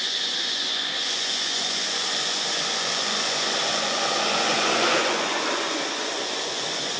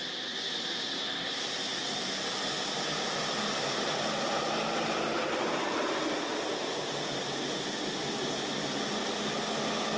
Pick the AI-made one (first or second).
first